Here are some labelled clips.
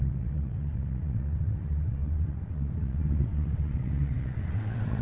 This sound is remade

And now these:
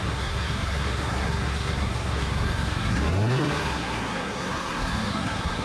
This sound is remade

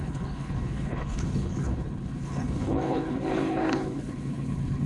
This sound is remade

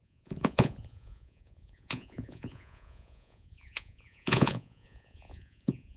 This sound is remade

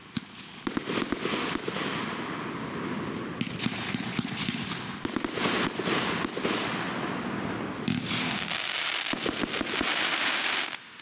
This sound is recorded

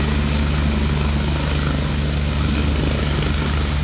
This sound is recorded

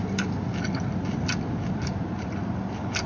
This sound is recorded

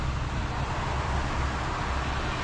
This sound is recorded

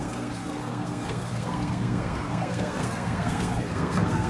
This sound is remade